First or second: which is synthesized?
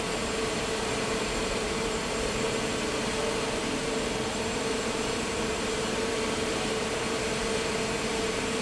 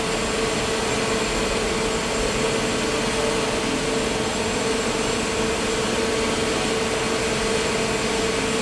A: first